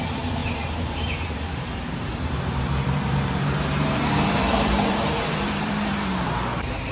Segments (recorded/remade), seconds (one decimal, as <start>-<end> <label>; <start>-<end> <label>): 0.0-6.9 remade